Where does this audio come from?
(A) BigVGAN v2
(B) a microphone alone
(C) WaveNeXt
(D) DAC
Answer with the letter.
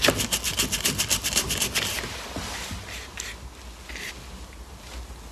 B